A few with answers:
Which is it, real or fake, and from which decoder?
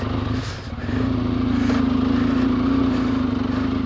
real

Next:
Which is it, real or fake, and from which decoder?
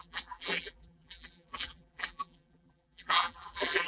fake, vocoder, BigVGAN v2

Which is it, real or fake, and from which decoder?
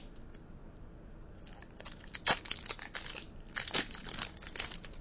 real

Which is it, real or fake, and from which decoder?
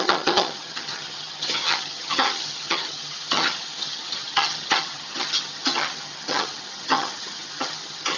fake, vocoder, HiFi-GAN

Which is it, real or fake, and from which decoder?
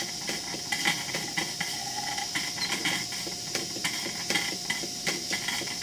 real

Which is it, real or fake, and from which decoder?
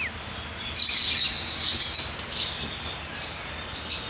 real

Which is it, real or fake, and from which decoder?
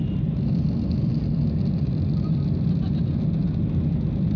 real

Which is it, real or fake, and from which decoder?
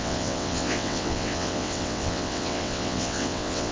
fake, vocoder, WaveNeXt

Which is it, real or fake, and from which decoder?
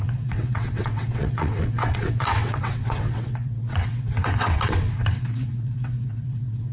fake, vocoder, WaveNeXt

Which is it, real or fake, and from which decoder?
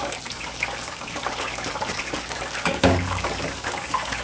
fake, codec, DAC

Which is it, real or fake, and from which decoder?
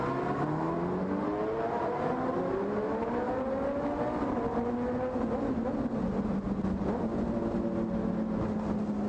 real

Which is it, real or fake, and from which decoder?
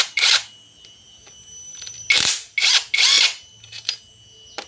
real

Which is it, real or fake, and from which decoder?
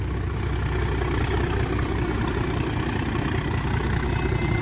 real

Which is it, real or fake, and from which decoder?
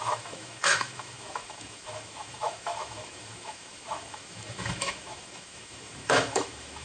fake, autoencoder, DAC-VAE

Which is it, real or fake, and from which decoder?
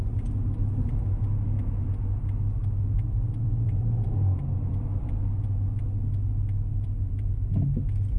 real